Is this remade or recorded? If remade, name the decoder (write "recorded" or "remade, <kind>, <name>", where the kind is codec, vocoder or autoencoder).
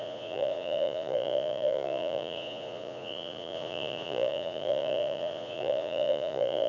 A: remade, vocoder, Vocos